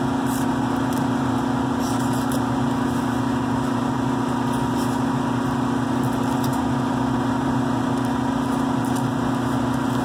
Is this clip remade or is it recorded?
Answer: recorded